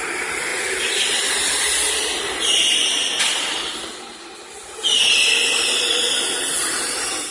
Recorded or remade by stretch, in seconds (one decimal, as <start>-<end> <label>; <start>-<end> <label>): 0.0-3.7 remade; 3.7-6.6 recorded; 6.6-7.3 remade